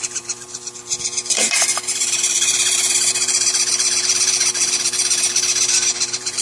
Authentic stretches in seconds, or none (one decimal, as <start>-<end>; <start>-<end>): none